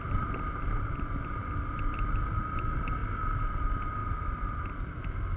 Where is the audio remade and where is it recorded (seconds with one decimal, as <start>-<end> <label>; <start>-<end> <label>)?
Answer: 0.0-5.4 remade

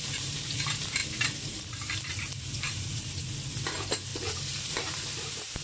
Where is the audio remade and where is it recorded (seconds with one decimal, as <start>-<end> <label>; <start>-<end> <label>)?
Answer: 0.0-5.6 remade

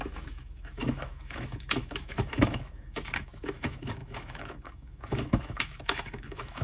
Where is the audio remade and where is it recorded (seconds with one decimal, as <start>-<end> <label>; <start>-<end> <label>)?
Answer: 0.0-6.6 remade

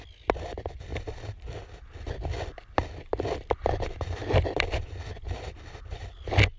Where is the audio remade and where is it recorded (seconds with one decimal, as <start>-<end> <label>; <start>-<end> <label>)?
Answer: 0.0-6.6 recorded

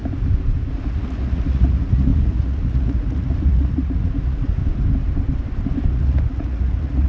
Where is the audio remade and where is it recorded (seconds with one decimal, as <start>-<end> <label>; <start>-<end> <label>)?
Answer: 0.0-0.7 recorded; 0.7-4.6 remade; 4.6-5.9 recorded; 5.9-7.1 remade

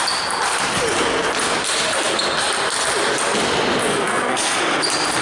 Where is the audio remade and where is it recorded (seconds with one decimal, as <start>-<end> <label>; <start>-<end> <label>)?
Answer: 0.0-3.9 recorded; 3.9-4.6 remade; 4.6-5.2 recorded